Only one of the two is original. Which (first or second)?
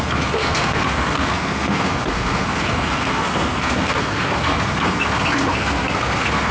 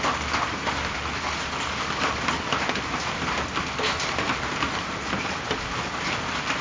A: second